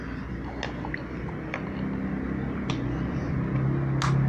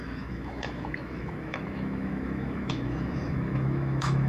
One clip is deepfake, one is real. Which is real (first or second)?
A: first